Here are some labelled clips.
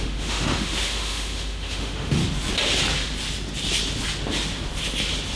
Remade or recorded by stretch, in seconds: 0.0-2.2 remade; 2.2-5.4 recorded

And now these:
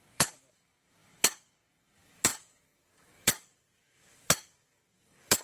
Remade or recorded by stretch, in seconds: 0.0-5.4 remade

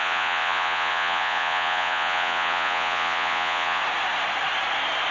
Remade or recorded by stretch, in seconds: 0.0-3.8 remade; 3.8-5.1 recorded

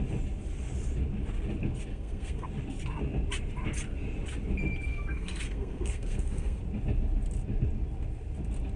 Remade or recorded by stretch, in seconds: 0.0-1.9 recorded; 1.9-2.5 remade; 2.5-4.9 recorded; 4.9-6.6 remade; 6.6-8.8 recorded

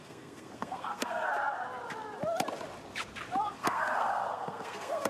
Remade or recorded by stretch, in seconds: 0.0-1.3 remade; 1.3-3.4 recorded; 3.4-5.1 remade

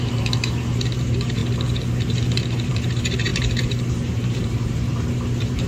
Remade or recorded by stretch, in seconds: 0.0-1.4 remade; 1.4-2.7 recorded; 2.7-5.7 remade

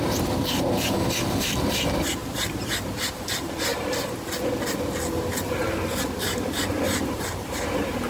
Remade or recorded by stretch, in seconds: 0.0-3.7 remade; 3.7-5.5 recorded; 5.5-8.1 remade